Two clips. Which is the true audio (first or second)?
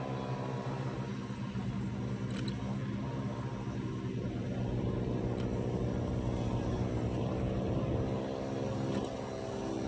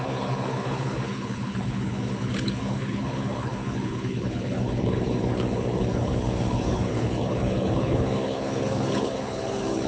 first